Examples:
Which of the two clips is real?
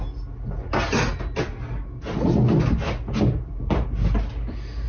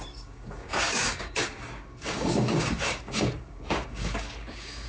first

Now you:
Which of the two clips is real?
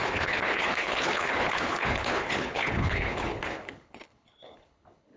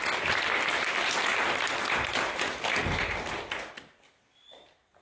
second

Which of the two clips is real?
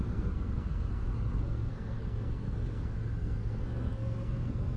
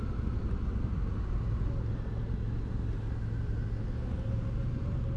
second